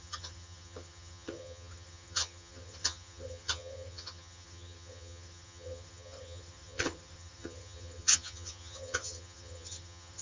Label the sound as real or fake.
fake